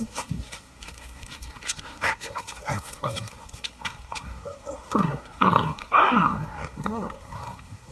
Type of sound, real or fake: fake